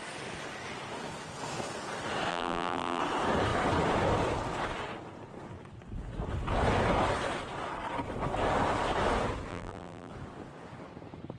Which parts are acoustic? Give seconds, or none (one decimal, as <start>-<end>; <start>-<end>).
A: 0.0-2.3; 3.0-9.5; 10.1-11.4